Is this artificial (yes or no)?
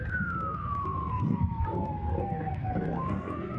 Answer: yes